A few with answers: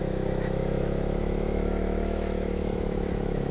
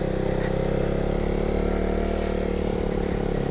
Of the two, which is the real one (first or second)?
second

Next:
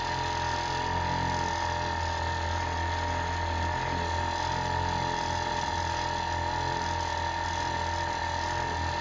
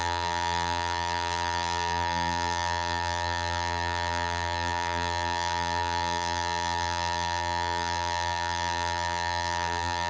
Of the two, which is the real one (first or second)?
first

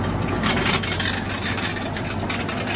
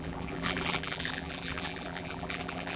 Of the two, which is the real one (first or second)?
first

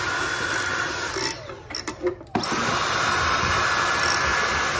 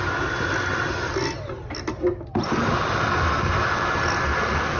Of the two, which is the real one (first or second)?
second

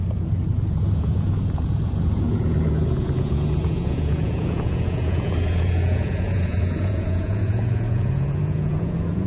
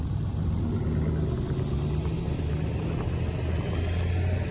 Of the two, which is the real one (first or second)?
second